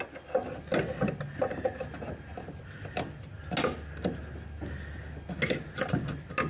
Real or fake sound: real